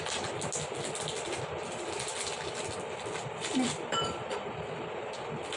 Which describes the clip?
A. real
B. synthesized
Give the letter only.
A